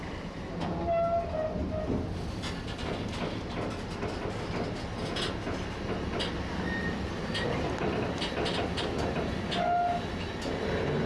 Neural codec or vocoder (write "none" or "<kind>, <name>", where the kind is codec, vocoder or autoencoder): none